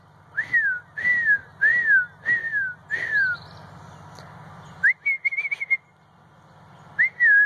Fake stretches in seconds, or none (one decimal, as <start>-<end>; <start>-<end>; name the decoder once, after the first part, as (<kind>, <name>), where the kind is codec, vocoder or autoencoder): none